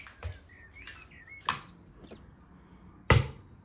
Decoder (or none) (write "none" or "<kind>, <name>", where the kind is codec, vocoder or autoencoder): none